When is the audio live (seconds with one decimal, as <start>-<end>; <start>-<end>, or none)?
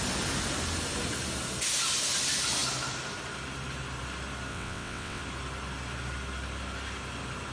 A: 0.0-4.5; 5.2-7.5